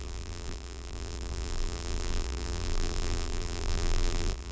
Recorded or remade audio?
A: remade